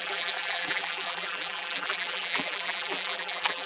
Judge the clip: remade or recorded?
remade